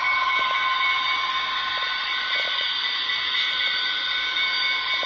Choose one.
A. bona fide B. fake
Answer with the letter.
B